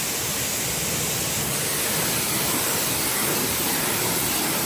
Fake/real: real